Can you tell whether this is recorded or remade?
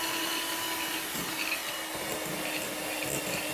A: recorded